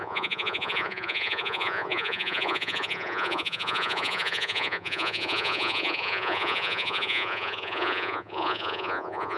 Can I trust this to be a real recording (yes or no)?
no